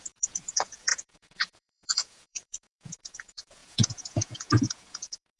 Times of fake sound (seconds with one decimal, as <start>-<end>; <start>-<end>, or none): 0.0-5.4